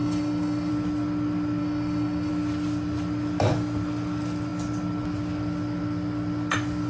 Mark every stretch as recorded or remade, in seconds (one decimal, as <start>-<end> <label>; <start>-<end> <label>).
0.0-0.7 remade; 0.7-1.6 recorded; 1.6-2.3 remade; 2.3-6.9 recorded